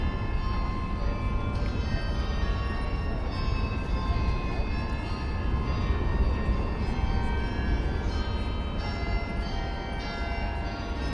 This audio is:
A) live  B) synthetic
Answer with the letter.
A